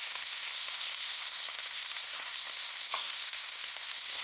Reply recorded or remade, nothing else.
remade